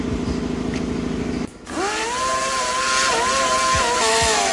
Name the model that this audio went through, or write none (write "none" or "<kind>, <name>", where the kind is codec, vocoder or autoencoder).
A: none